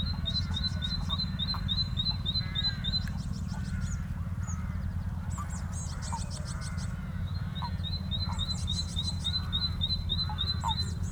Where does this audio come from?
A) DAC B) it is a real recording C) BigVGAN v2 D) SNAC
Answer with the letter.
B